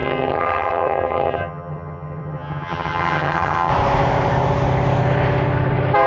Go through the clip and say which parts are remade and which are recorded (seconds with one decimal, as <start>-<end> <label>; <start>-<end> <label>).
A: 0.0-3.7 remade; 3.7-6.1 recorded